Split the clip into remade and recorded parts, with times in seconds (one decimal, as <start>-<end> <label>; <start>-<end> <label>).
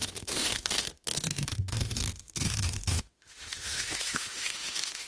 0.0-5.1 remade